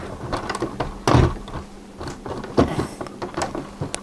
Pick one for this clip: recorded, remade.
recorded